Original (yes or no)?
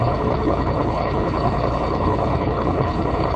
no